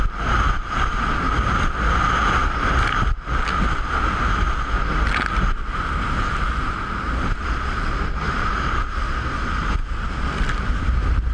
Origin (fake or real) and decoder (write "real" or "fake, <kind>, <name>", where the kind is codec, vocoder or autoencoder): real